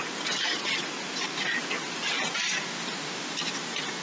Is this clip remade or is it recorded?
recorded